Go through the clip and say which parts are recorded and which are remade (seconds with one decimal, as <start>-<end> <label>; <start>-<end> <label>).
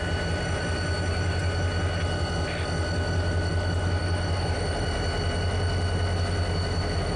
0.0-7.2 recorded